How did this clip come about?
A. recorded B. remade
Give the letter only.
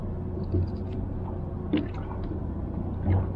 A